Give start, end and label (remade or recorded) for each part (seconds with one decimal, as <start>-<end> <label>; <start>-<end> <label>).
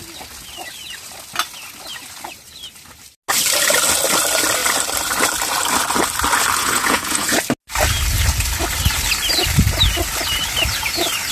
0.0-6.6 recorded; 6.6-7.4 remade; 7.4-11.3 recorded